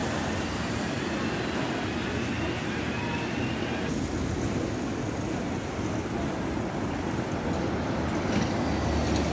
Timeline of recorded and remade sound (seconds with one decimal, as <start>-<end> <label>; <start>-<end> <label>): 0.0-9.3 recorded